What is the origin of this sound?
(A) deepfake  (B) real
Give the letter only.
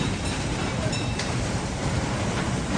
A